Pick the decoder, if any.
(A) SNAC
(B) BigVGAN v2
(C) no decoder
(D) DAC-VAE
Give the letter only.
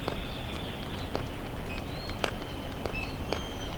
C